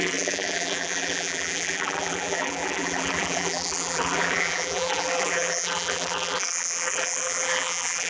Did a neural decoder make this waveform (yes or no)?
yes